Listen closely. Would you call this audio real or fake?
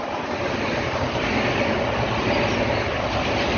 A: real